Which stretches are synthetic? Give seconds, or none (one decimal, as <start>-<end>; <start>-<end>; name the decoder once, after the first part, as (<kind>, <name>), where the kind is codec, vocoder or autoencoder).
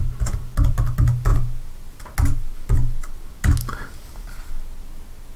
none